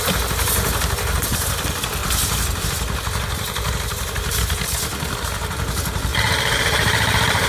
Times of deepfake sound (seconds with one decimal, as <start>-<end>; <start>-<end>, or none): 2.0-2.6; 6.1-7.5

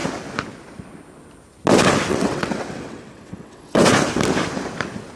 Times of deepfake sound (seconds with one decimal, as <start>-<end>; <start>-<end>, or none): 2.1-3.8

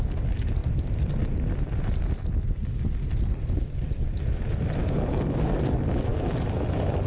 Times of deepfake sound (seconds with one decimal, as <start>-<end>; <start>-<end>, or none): none

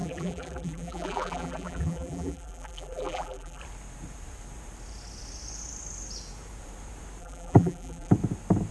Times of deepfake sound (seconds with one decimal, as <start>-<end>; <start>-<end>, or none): 0.0-3.6; 7.2-8.1

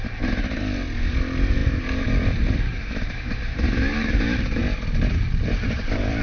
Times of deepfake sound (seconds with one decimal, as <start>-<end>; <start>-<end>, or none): 0.0-4.6; 5.3-6.2

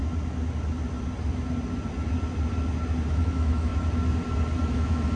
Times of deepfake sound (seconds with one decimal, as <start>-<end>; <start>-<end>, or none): 3.1-3.7; 4.7-5.2

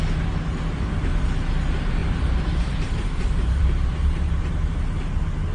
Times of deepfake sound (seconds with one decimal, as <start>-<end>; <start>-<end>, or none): 2.0-4.6